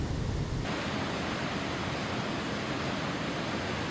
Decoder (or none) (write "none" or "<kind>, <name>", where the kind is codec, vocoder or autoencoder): none